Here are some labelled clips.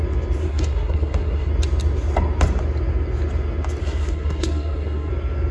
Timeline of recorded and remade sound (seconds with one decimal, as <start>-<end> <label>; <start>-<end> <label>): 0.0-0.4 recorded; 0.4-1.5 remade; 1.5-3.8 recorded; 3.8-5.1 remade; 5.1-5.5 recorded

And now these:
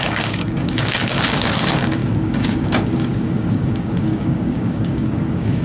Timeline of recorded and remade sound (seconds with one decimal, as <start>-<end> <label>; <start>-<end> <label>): 0.0-5.6 remade

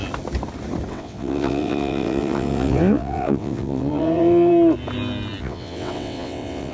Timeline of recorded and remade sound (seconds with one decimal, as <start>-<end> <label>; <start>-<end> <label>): 0.0-0.9 recorded; 0.9-4.5 remade; 4.5-5.4 recorded; 5.4-6.7 remade

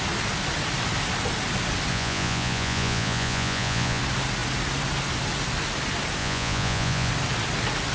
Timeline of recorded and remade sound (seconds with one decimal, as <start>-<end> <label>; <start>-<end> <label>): 0.0-1.9 recorded; 1.9-4.0 remade; 4.0-6.2 recorded; 6.2-7.1 remade; 7.1-7.9 recorded

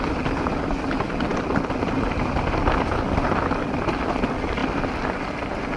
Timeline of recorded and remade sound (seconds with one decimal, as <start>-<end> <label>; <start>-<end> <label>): 0.0-5.8 recorded

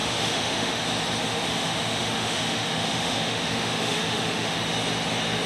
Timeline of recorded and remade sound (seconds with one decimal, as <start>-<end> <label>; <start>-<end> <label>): 0.0-0.8 remade; 0.8-1.3 recorded; 1.3-4.6 remade; 4.6-5.5 recorded

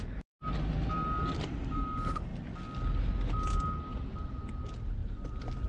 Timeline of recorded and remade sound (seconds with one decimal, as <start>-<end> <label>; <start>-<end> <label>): 0.0-1.2 recorded; 1.2-1.8 remade; 1.8-3.9 recorded; 3.9-4.5 remade; 4.5-5.0 recorded; 5.0-5.7 remade

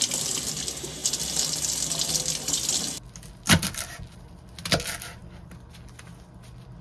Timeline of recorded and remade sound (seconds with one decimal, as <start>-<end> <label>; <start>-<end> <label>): 0.0-6.8 recorded